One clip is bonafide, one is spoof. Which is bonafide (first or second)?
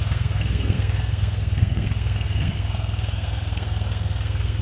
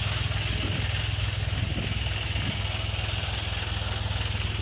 second